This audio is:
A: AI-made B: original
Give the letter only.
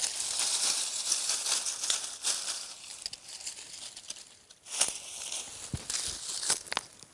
B